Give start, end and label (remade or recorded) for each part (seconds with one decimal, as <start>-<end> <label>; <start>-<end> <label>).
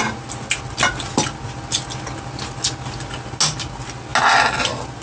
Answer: 0.0-5.0 recorded